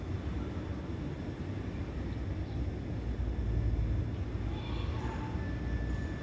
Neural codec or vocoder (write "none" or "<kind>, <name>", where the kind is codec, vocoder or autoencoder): none